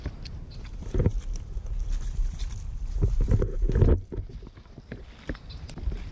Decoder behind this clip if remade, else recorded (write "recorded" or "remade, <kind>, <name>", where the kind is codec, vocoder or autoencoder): recorded